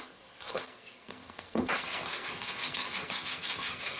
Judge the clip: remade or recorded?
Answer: remade